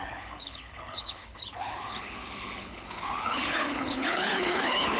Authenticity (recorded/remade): remade